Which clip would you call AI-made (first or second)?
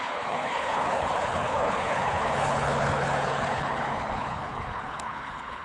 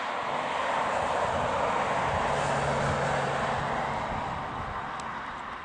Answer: first